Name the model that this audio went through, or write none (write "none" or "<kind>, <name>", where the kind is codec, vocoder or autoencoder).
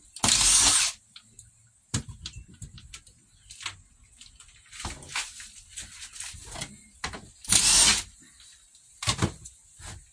none